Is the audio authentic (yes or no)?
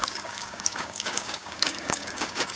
no